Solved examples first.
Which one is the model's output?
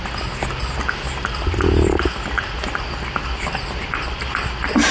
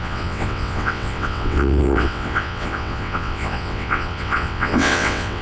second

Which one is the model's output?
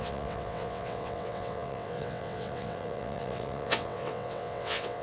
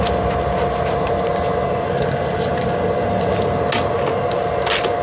first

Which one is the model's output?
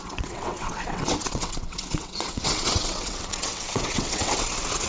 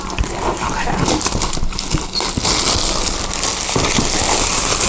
first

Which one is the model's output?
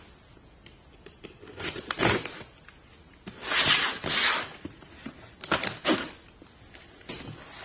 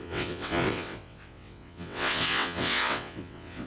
second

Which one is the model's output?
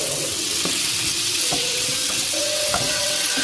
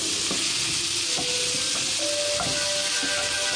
first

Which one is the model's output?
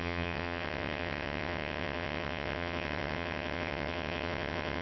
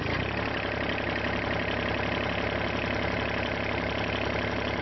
first